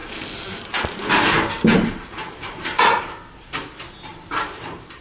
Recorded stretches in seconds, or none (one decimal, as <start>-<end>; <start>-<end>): 3.0-4.1